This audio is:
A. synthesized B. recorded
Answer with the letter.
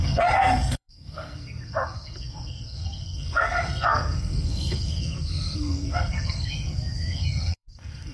A